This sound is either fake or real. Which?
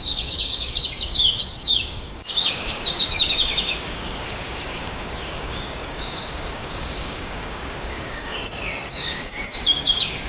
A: fake